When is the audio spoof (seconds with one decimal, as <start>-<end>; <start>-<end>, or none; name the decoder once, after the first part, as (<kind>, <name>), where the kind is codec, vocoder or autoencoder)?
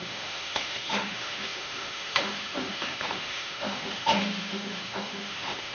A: 0.0-5.7 (autoencoder, DAC-VAE)